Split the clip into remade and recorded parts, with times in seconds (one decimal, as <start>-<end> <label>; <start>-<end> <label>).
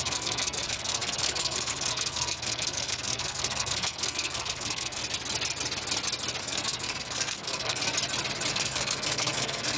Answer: 0.0-5.0 remade; 5.0-6.4 recorded; 6.4-7.8 remade; 7.8-8.5 recorded; 8.5-9.8 remade